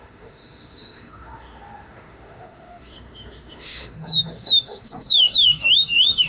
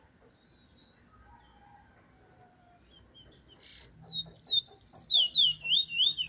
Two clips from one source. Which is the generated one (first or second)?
first